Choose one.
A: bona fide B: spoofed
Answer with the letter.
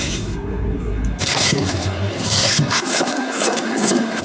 B